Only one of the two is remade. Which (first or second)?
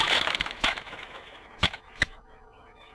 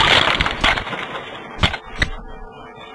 first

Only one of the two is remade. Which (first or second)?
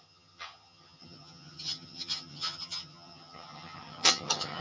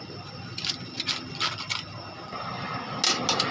first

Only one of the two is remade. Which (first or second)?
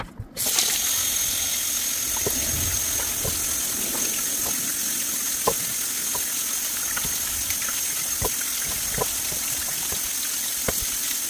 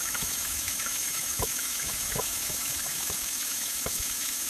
second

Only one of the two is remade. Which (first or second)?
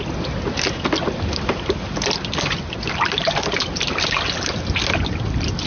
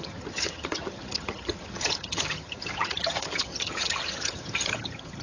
second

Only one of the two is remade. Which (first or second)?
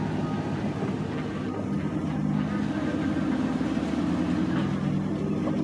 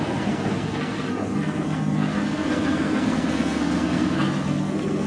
second